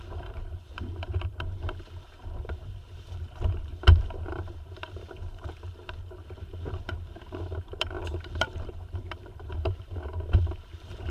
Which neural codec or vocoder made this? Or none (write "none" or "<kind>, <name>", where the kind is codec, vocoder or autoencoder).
vocoder, BigVGAN v2